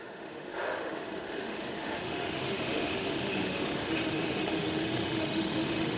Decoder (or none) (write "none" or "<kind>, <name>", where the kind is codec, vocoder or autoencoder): autoencoder, DAC-VAE